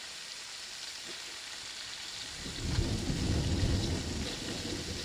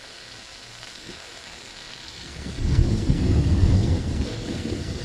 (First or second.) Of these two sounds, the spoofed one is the second